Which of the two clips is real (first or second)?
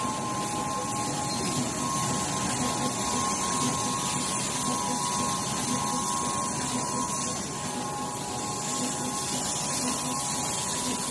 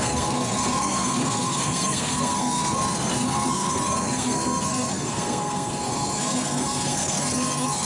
first